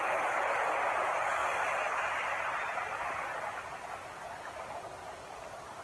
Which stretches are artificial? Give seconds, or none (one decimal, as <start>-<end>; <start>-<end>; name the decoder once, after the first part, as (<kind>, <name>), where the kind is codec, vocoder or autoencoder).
none